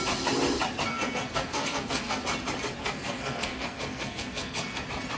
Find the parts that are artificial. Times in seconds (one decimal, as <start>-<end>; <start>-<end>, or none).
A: 0.9-2.2; 2.8-4.8